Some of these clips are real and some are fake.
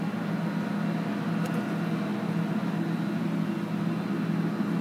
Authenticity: real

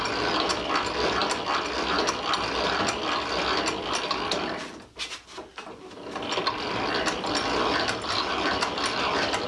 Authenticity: real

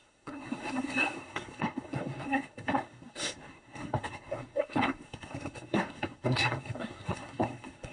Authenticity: fake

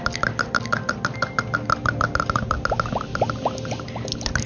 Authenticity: real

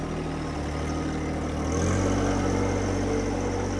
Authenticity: real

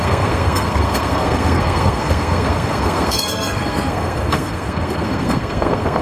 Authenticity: fake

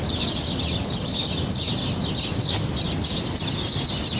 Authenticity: real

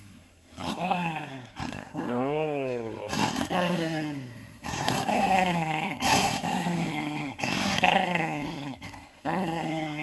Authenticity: fake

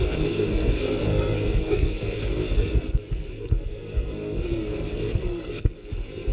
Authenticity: fake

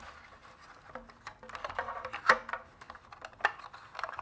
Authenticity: real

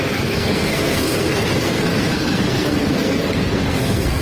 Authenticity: fake